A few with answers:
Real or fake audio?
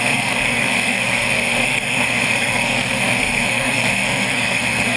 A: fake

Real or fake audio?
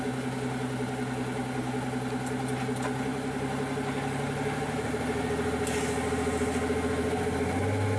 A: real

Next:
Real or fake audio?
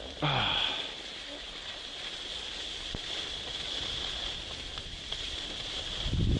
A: real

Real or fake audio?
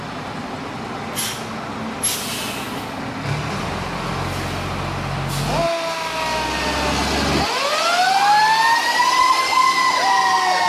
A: real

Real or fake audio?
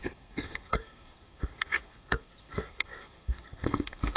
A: fake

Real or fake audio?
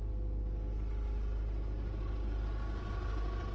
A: real